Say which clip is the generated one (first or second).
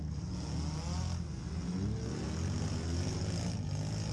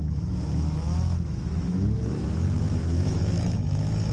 second